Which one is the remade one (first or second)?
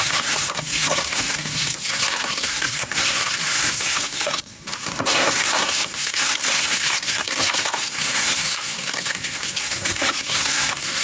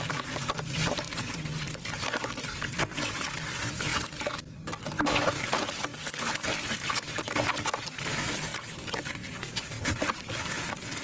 first